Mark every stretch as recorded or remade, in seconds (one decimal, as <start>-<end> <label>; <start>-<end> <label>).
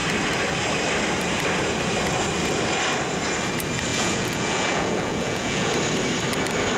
0.0-3.9 recorded; 3.9-5.7 remade; 5.7-6.8 recorded